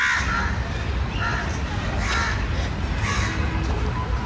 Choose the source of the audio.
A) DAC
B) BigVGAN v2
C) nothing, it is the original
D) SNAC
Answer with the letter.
C